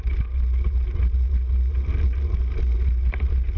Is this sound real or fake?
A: real